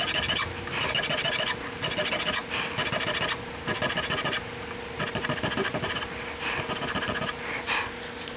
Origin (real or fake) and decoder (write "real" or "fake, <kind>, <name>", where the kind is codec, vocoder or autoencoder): real